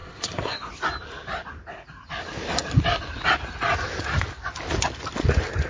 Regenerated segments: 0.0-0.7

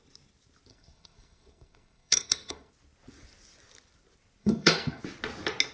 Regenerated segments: 0.7-2.7; 4.4-5.0

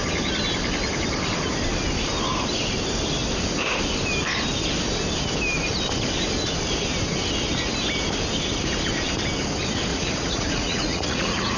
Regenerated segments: 9.9-11.6

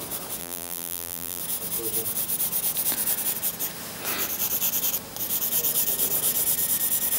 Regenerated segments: 0.4-1.4